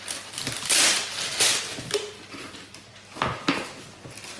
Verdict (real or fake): real